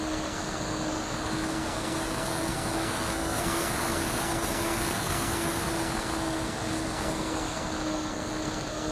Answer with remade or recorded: remade